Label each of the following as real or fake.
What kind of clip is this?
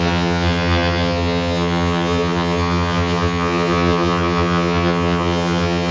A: fake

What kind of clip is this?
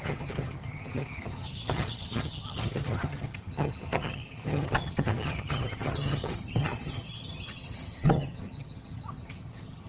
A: fake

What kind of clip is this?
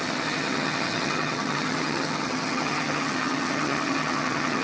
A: fake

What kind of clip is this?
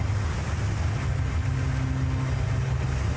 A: real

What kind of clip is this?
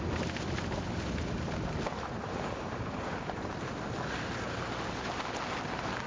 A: real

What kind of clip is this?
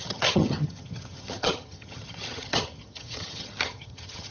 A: fake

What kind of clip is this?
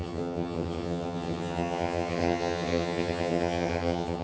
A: fake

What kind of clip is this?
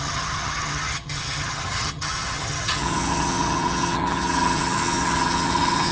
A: fake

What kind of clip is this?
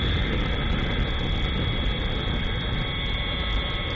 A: real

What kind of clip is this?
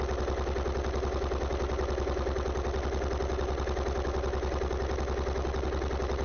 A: real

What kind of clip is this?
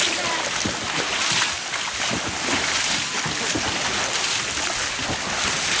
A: real